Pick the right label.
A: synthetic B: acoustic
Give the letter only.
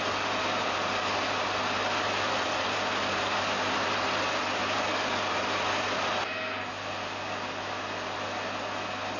B